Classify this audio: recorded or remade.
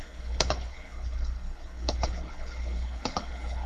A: remade